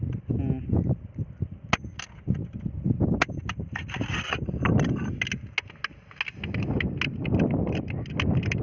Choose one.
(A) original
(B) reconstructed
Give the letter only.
A